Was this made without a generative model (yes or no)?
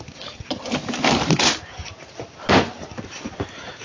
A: yes